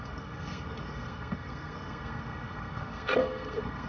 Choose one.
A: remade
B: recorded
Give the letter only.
A